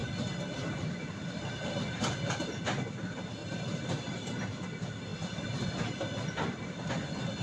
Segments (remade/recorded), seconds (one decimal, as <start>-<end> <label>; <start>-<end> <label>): 0.0-1.5 remade; 1.5-3.4 recorded; 3.4-4.3 remade; 4.3-7.4 recorded